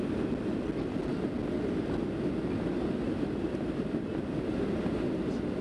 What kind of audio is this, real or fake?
real